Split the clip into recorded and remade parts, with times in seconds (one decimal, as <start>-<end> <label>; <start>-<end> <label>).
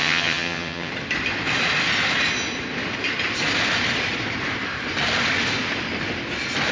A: 0.0-0.9 remade; 0.9-6.7 recorded